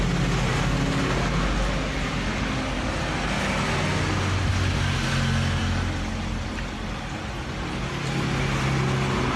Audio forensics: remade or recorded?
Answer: recorded